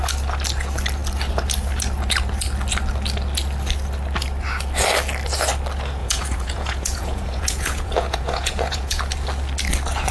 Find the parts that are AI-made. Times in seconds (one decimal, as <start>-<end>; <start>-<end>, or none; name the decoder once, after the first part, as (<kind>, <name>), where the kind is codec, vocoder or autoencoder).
6.0-9.0 (vocoder, Vocos)